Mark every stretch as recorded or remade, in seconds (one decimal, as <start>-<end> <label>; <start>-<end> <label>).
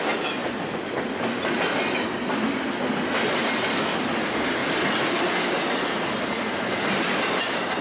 0.0-7.8 recorded